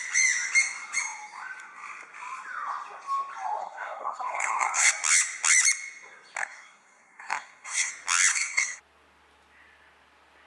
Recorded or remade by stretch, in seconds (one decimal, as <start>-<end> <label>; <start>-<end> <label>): 0.0-3.6 recorded; 3.6-4.9 remade; 4.9-6.4 recorded; 6.4-7.9 remade; 7.9-8.3 recorded; 8.3-8.8 remade; 8.8-10.5 recorded

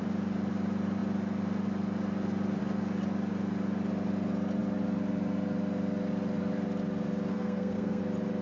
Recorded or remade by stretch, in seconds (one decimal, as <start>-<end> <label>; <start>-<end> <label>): 0.0-7.3 recorded; 7.3-8.0 remade; 8.0-8.4 recorded

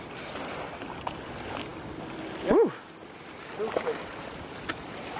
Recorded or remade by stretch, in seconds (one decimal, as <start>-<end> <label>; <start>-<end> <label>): 0.0-5.2 recorded